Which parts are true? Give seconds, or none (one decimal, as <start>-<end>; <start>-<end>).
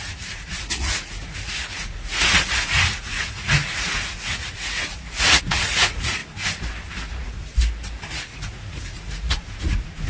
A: 6.2-7.1; 7.5-8.1